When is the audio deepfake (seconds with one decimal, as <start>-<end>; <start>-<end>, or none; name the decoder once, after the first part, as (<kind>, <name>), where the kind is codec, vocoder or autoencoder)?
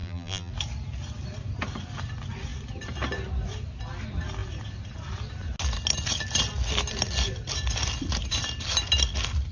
0.0-0.5 (vocoder, BigVGAN v2)